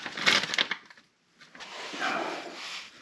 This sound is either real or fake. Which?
real